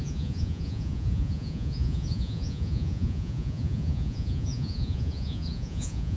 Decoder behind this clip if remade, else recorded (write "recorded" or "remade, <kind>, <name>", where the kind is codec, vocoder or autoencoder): remade, vocoder, Vocos